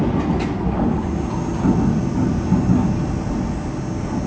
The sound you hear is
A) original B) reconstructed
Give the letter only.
A